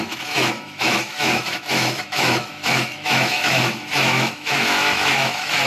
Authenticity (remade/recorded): remade